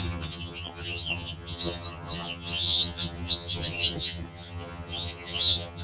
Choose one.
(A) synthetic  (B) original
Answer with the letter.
A